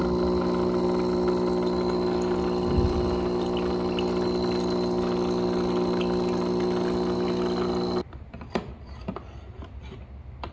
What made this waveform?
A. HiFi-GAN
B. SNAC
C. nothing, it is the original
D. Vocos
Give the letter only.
C